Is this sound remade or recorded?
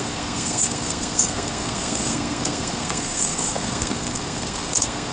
remade